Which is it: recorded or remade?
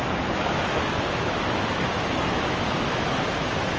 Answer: remade